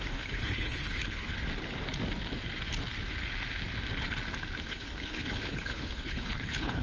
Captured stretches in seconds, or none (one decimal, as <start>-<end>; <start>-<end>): 1.3-4.6